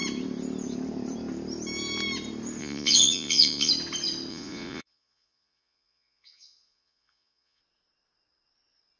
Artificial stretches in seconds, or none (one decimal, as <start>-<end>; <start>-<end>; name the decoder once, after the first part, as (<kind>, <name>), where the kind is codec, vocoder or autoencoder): 2.6-3.7 (vocoder, Vocos); 4.3-7.6